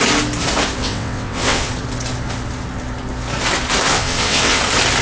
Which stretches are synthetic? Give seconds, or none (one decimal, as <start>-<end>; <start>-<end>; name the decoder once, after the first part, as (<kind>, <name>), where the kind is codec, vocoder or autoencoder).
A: 0.8-1.7 (vocoder, WaveNeXt); 3.9-4.6

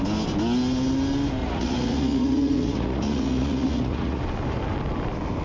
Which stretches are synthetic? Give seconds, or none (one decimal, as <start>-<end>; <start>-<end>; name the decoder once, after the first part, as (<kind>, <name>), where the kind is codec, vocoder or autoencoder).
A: 1.4-4.2 (vocoder, Vocos)